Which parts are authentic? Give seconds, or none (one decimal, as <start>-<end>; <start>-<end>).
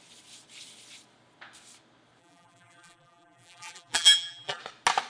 0.0-2.2; 4.6-5.1